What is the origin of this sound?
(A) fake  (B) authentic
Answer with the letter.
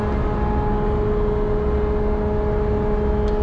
B